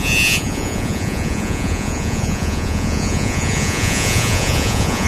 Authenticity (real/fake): fake